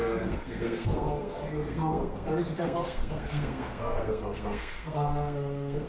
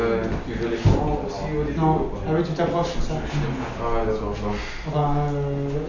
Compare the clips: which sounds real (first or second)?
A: second